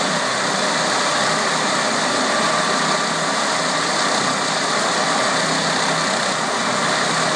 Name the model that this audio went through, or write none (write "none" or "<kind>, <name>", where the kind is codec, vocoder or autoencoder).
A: none